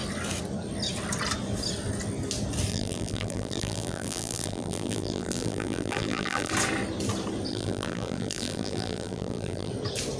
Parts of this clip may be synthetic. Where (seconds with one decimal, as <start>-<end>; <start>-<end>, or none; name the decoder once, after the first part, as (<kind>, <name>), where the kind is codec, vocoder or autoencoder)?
2.7-6.5 (vocoder, BigVGAN v2); 7.5-9.7

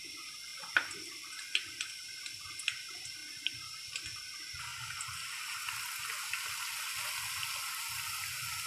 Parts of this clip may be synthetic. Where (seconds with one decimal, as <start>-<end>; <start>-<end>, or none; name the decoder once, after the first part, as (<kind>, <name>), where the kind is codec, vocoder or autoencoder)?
none

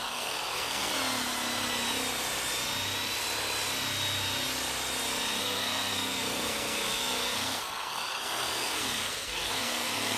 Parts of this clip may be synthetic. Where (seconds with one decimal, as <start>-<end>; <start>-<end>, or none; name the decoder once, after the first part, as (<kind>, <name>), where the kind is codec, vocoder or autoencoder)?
0.0-0.9 (codec, SNAC); 5.4-10.2